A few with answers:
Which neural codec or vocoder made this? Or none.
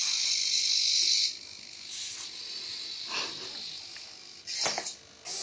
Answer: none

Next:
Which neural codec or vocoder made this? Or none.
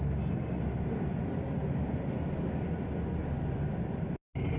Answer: none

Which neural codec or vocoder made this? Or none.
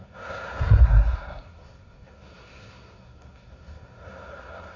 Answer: codec, SNAC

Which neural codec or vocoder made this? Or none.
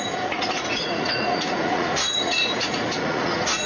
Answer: vocoder, Vocos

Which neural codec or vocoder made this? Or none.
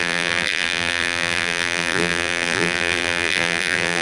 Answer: vocoder, BigVGAN v2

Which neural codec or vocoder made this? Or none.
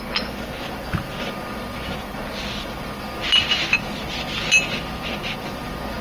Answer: none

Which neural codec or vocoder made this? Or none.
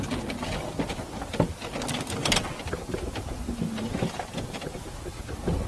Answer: none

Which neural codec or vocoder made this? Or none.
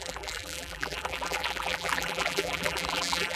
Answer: vocoder, BigVGAN v2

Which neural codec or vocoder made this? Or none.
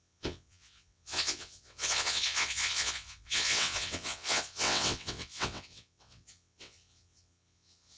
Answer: vocoder, WaveNeXt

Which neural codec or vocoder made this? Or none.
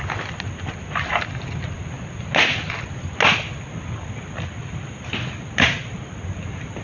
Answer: none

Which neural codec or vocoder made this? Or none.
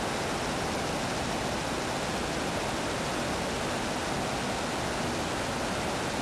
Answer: none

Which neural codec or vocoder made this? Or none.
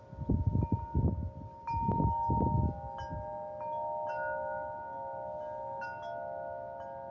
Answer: none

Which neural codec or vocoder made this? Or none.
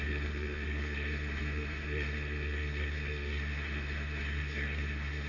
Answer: codec, SNAC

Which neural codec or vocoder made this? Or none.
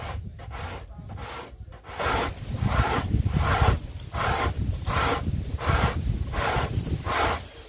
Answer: none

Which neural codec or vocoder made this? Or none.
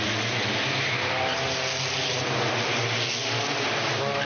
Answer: none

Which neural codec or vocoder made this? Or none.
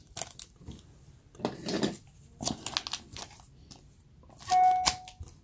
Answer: none